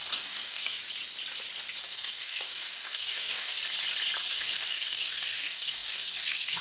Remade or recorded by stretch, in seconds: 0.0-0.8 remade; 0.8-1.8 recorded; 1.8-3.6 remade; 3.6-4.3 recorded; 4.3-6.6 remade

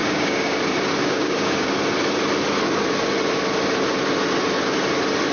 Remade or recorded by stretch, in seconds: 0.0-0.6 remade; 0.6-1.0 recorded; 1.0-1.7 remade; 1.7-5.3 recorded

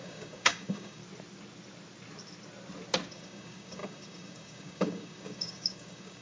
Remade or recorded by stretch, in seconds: 0.0-1.0 remade; 1.0-3.1 recorded; 3.1-6.2 remade

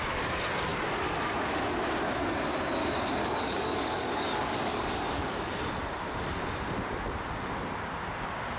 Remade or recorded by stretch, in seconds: 0.0-2.8 recorded; 2.8-5.5 remade; 5.5-8.6 recorded

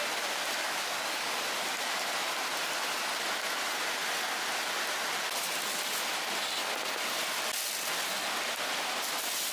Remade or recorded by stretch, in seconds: 0.0-0.6 recorded; 0.6-1.3 remade; 1.3-9.5 recorded

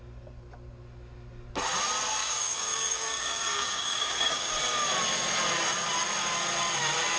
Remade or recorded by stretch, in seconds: 0.0-2.2 recorded; 2.2-4.5 remade; 4.5-7.2 recorded

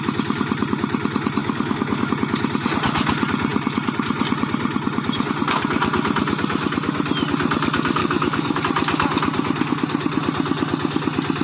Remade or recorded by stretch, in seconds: 0.0-1.4 recorded; 1.4-2.1 remade; 2.1-8.0 recorded; 8.0-8.6 remade; 8.6-11.4 recorded

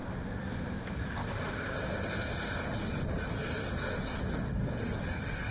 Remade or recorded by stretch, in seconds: 0.0-4.5 recorded; 4.5-5.5 remade